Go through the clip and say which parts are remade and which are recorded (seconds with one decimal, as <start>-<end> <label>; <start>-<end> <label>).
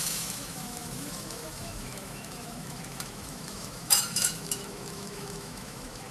0.0-6.1 remade